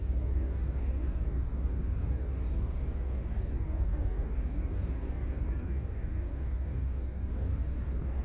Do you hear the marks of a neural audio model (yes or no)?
yes